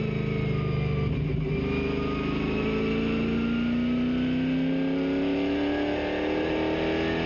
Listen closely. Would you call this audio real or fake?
real